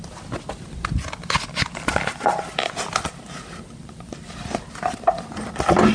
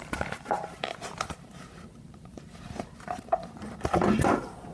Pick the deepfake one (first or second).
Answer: second